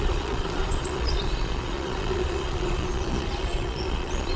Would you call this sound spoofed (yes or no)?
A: yes